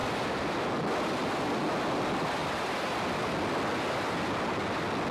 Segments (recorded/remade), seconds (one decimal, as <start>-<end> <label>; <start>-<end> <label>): 0.0-5.1 recorded